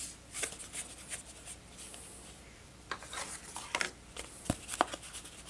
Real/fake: real